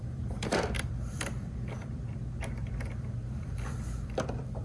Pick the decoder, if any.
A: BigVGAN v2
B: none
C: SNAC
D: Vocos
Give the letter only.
A